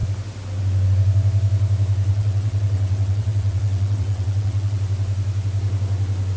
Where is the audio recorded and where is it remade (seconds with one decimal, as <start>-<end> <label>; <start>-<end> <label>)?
0.0-2.1 recorded; 2.1-4.8 remade; 4.8-6.4 recorded